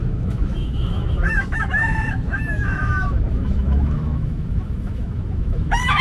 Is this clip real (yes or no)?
no